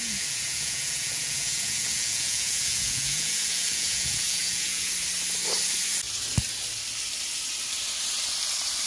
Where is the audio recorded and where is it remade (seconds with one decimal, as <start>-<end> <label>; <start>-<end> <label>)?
0.0-4.9 remade; 4.9-8.9 recorded